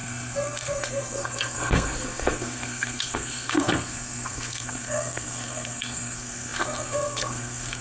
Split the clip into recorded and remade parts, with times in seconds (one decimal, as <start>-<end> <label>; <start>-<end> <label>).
0.0-7.8 remade